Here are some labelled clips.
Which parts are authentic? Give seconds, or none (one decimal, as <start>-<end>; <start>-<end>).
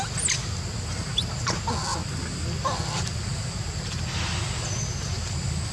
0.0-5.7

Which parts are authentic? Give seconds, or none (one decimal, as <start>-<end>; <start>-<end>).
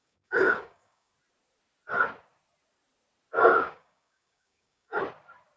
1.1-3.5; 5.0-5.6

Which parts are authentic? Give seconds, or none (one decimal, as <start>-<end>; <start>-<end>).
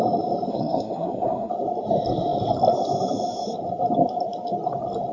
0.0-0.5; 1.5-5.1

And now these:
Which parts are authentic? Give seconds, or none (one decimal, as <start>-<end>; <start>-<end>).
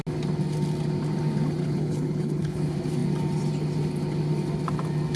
0.0-1.6; 2.6-5.2